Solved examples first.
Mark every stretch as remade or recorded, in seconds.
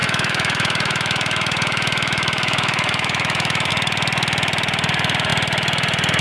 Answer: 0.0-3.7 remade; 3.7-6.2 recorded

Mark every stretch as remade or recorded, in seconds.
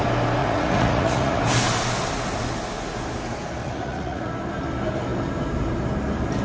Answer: 0.0-0.4 recorded; 0.4-1.4 remade; 1.4-3.6 recorded; 3.6-4.3 remade; 4.3-6.4 recorded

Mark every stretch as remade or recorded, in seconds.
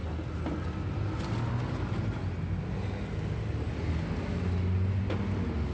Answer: 0.0-5.7 recorded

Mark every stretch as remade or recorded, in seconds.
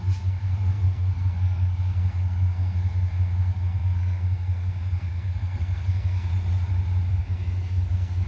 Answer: 0.0-6.3 remade; 6.3-7.1 recorded; 7.1-8.3 remade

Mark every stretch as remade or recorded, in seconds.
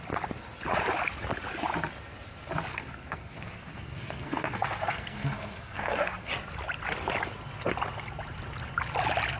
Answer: 0.0-2.7 recorded; 2.7-6.3 remade; 6.3-9.4 recorded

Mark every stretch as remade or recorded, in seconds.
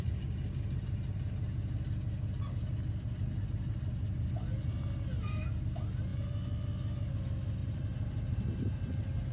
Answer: 0.0-7.6 recorded; 7.6-9.3 remade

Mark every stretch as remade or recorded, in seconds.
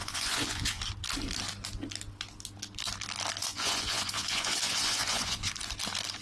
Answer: 0.0-0.8 remade; 0.8-3.4 recorded; 3.4-5.5 remade; 5.5-6.2 recorded